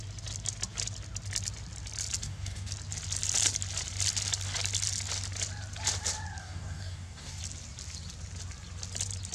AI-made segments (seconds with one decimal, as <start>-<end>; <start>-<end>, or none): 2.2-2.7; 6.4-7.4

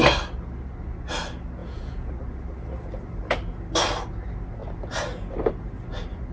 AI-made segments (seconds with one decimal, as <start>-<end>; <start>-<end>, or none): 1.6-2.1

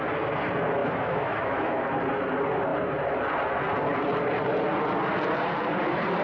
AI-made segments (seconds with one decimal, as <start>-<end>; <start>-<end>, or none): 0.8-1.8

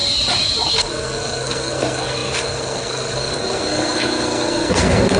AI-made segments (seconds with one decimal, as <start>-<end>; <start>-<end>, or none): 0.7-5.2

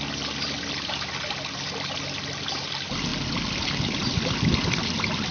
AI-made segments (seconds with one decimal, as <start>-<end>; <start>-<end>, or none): none